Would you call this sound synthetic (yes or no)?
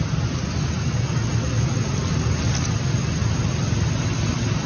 no